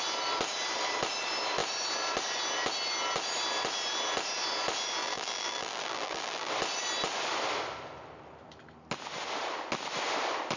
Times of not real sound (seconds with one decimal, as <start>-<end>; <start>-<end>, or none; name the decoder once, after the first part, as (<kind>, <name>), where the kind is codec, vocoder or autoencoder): 5.0-6.5 (vocoder, BigVGAN v2)